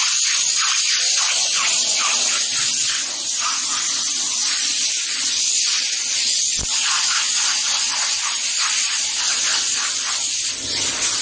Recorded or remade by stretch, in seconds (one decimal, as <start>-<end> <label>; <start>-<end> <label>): 0.0-11.2 recorded

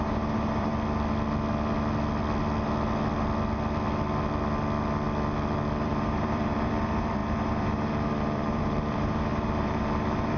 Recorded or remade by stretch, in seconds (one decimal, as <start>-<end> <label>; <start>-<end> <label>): 0.0-0.7 remade; 0.7-5.8 recorded; 5.8-10.4 remade